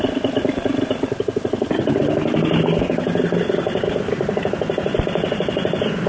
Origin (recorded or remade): recorded